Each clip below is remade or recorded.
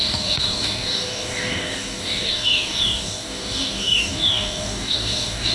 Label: remade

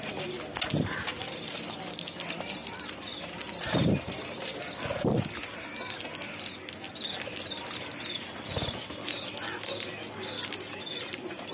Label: recorded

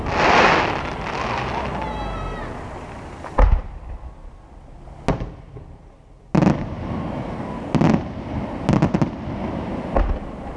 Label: recorded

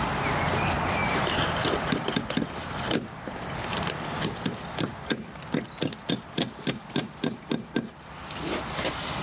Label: recorded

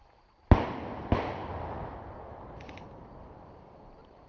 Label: recorded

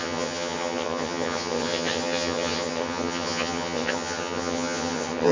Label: remade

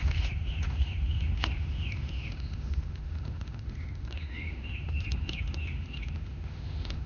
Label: remade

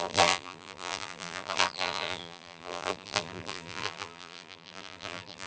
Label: remade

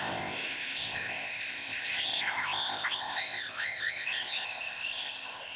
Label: remade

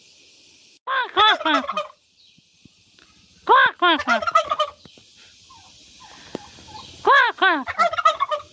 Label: recorded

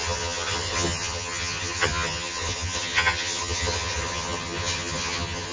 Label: remade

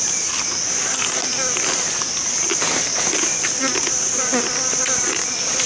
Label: recorded